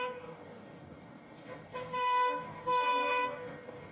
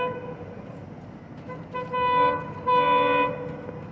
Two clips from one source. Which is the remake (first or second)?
first